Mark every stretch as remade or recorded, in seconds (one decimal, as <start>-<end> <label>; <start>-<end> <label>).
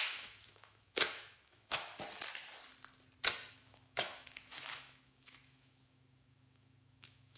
0.0-1.9 remade; 1.9-3.5 recorded; 3.5-7.4 remade